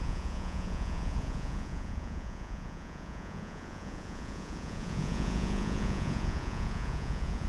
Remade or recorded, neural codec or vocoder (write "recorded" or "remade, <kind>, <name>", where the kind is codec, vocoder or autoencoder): remade, vocoder, Vocos